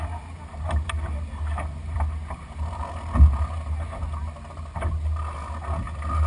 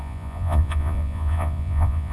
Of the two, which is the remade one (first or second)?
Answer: second